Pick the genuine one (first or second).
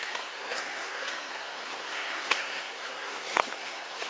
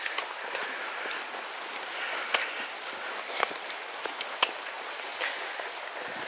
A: second